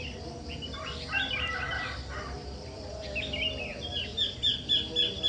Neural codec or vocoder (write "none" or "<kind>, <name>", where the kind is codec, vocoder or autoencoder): none